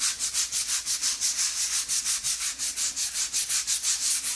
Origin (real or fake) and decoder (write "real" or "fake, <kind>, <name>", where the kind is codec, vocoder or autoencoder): real